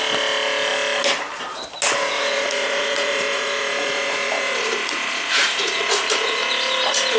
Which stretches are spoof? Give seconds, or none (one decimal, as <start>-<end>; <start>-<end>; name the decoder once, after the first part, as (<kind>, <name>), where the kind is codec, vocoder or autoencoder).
2.1-6.4 (vocoder, Vocos)